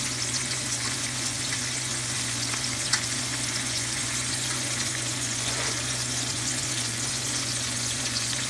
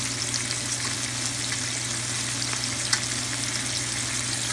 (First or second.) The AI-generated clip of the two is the first